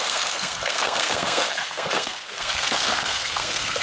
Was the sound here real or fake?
fake